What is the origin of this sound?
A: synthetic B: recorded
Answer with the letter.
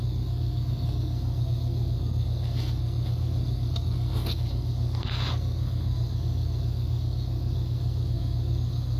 A